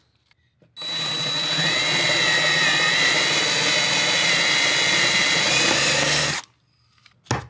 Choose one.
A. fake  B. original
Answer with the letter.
B